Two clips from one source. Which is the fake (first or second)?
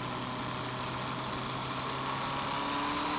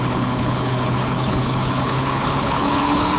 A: second